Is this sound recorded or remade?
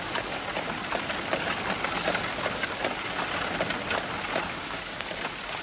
recorded